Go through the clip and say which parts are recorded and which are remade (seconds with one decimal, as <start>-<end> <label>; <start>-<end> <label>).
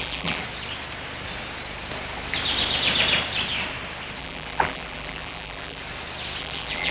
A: 0.0-0.4 remade; 0.4-4.2 recorded; 4.2-5.8 remade; 5.8-6.4 recorded; 6.4-6.9 remade